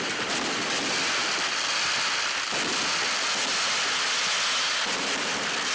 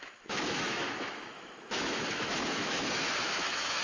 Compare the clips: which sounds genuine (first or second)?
first